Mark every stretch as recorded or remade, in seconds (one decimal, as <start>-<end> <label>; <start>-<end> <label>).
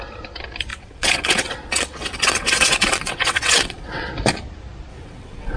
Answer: 0.0-0.7 recorded; 0.7-4.1 remade; 4.1-4.9 recorded; 4.9-5.6 remade